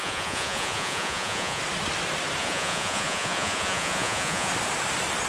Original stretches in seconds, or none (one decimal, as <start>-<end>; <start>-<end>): 1.6-2.4; 4.5-5.3